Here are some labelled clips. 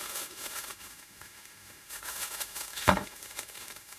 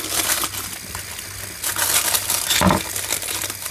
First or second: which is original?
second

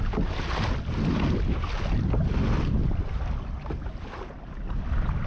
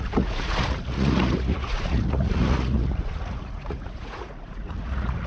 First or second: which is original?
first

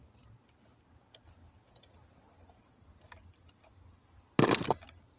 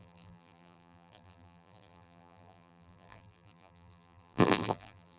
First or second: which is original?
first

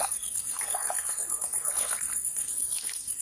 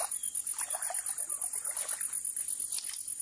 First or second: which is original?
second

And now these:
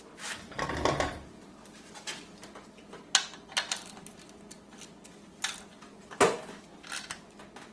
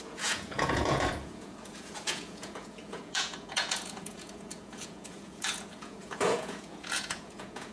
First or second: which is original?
first